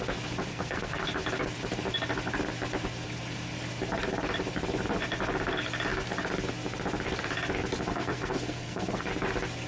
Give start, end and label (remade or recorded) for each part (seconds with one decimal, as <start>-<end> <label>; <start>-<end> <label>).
0.0-0.5 recorded; 0.5-1.0 remade; 1.0-7.9 recorded; 7.9-9.1 remade; 9.1-9.7 recorded

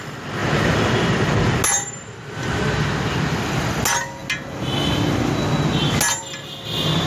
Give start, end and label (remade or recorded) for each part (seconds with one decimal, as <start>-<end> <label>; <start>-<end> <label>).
0.0-7.1 recorded

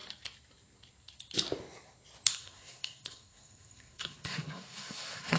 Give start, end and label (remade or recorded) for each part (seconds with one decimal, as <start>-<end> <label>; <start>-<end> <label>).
0.0-2.3 recorded; 2.3-5.4 remade

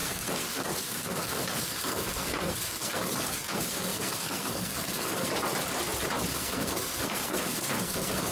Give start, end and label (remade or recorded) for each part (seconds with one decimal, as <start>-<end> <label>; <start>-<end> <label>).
0.0-5.3 remade; 5.3-6.3 recorded; 6.3-8.3 remade

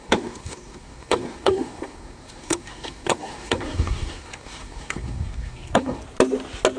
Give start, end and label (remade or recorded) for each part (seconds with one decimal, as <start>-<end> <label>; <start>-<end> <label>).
0.0-6.0 remade; 6.0-6.8 recorded

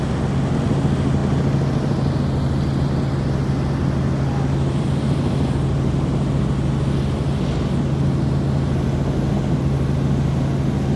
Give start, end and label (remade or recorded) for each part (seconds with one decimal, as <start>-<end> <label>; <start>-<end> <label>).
0.0-11.0 recorded

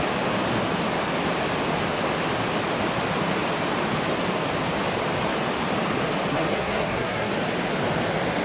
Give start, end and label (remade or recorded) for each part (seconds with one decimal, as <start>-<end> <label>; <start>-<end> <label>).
0.0-6.3 recorded; 6.3-7.3 remade; 7.3-8.4 recorded